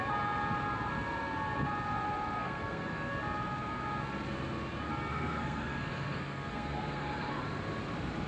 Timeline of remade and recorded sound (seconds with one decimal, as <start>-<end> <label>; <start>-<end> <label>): 0.0-2.4 recorded; 2.4-3.1 remade; 3.1-5.1 recorded; 5.1-7.4 remade; 7.4-8.3 recorded